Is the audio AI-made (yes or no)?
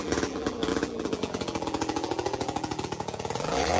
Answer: yes